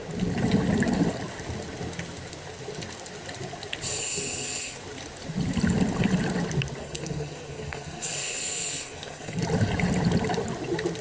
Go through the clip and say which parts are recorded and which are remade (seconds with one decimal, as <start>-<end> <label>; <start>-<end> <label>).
0.0-4.0 recorded; 4.0-4.8 remade; 4.8-6.8 recorded; 6.8-9.4 remade; 9.4-11.0 recorded